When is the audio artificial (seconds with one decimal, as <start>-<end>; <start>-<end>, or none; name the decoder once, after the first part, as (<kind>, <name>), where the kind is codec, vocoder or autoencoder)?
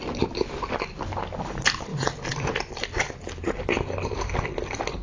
none